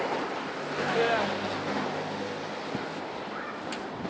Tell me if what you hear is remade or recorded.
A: recorded